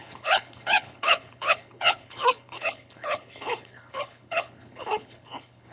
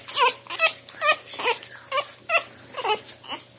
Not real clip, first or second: first